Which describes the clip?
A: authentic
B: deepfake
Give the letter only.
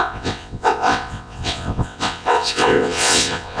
B